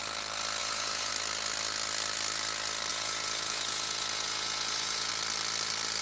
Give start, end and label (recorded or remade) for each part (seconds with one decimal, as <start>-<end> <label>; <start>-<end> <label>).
0.0-0.6 recorded; 0.6-1.1 remade; 1.1-2.9 recorded; 2.9-5.1 remade; 5.1-6.0 recorded